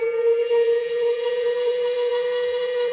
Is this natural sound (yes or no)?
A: no